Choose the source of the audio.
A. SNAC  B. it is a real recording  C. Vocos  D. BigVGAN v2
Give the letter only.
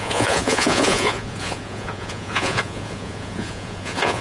C